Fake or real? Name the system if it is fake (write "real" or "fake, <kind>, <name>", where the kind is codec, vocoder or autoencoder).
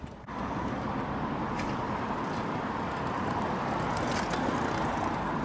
real